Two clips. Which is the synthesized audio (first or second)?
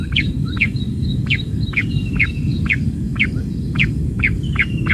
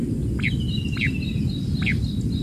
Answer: first